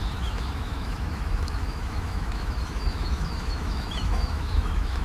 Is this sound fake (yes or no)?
yes